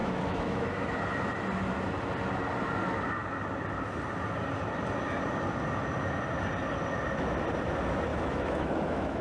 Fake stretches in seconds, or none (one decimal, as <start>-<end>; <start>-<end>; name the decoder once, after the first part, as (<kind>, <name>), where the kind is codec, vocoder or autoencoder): 0.0-0.9 (autoencoder, DAC-VAE); 8.1-9.2